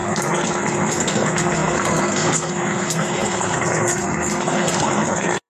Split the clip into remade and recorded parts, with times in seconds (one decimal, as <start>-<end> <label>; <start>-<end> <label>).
0.0-5.5 remade